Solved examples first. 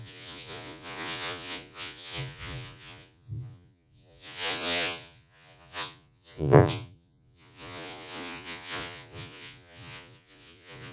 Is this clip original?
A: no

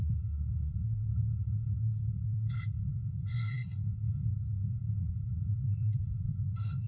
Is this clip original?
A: no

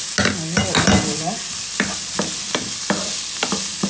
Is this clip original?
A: yes